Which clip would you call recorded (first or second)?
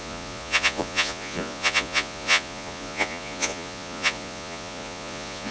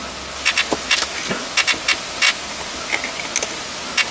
second